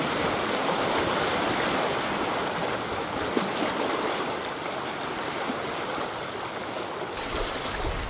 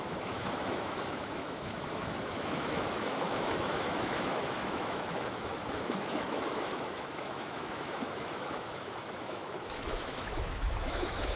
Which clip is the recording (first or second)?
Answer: first